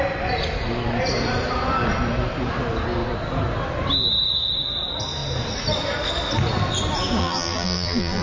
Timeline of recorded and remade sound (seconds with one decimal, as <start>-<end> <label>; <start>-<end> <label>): 0.0-7.2 recorded; 7.2-8.2 remade

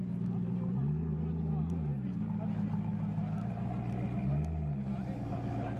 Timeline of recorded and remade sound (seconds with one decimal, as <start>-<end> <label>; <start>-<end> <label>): 0.0-5.8 recorded

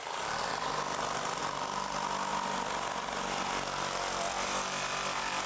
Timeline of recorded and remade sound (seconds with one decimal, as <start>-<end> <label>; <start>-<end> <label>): 0.0-0.5 remade; 0.5-1.4 recorded; 1.4-5.5 remade